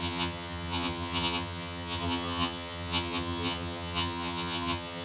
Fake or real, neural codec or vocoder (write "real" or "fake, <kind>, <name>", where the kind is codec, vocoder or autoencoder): fake, vocoder, HiFi-GAN